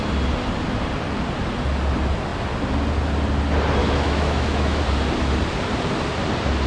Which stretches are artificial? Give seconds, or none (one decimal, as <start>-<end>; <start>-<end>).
3.8-4.8